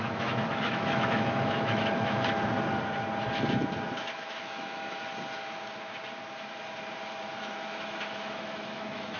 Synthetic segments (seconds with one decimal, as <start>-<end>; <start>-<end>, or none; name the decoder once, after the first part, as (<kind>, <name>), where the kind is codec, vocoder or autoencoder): 0.0-2.4 (autoencoder, DAC-VAE); 4.1-5.0; 7.4-9.2